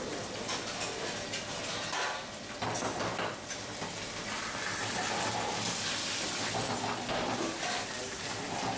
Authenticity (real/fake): real